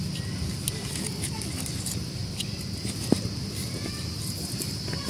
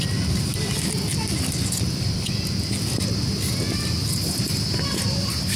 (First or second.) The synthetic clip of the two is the first